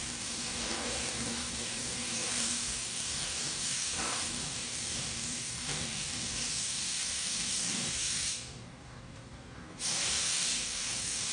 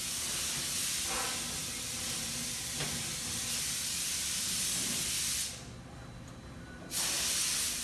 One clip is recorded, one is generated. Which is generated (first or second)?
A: first